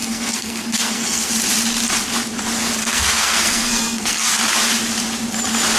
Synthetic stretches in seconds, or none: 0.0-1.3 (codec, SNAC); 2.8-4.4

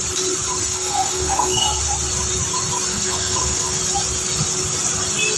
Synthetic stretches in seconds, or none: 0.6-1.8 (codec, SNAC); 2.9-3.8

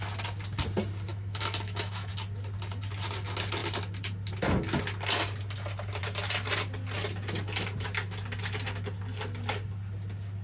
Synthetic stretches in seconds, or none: 1.1-2.1 (autoencoder, DAC-VAE)

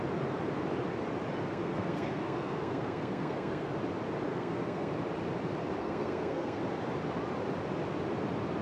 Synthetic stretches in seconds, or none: 1.4-3.7 (codec, SNAC); 4.3-4.9; 5.8-6.6

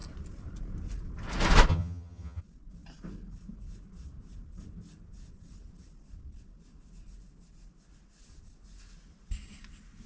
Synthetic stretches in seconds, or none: 1.7-2.4 (vocoder, HiFi-GAN)

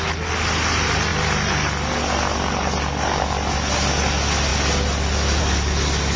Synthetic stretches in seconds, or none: none

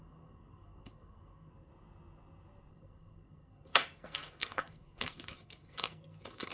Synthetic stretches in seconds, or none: 0.0-1.7 (codec, SNAC); 2.7-6.5